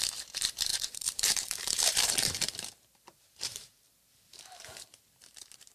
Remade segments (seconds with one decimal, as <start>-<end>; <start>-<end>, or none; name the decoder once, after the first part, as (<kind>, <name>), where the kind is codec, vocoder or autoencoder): 0.7-3.8 (vocoder, BigVGAN v2)